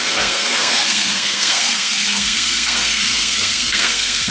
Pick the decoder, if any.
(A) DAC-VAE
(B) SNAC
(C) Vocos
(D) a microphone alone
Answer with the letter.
B